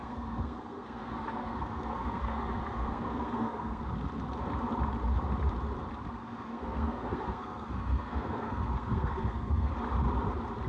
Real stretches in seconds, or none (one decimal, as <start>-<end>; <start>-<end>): 3.8-6.2; 9.7-10.7